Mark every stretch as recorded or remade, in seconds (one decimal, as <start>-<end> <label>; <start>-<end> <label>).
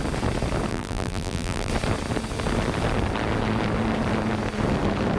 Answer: 0.0-0.7 recorded; 0.7-1.7 remade; 1.7-5.2 recorded